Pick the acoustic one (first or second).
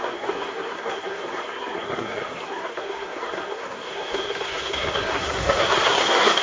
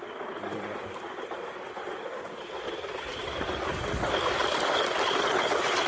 second